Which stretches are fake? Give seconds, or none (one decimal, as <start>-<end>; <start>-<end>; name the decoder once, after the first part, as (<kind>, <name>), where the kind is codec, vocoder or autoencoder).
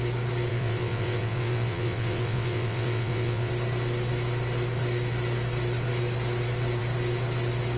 0.5-3.5 (vocoder, WaveNeXt)